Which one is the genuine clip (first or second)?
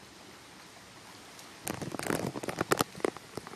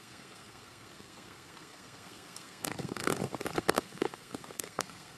first